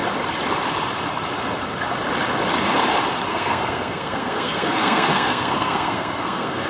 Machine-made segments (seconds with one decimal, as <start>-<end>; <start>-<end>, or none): 3.3-6.7